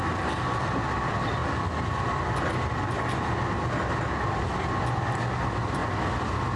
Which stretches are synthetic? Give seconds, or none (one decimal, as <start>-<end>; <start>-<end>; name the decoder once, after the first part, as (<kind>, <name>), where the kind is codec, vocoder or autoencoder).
none